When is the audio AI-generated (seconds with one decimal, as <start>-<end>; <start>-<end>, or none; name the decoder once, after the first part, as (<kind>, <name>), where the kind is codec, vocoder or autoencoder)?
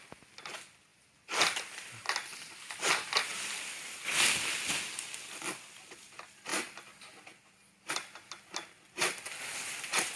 none